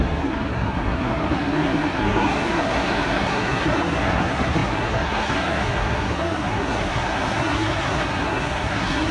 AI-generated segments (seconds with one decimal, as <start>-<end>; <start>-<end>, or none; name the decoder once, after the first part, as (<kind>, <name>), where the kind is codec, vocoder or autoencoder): 0.0-9.1 (codec, SNAC)